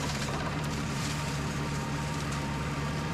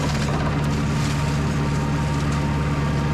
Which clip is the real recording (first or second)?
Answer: second